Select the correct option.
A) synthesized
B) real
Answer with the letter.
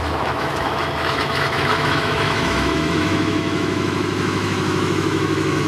A